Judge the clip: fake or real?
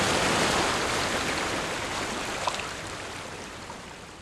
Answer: real